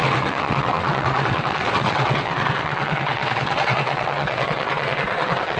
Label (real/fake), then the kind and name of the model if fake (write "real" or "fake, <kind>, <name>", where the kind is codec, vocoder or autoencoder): fake, vocoder, WaveNeXt